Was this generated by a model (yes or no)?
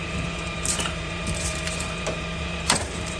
yes